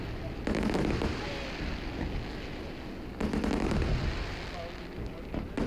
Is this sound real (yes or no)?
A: yes